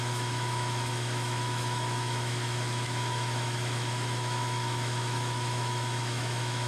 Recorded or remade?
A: remade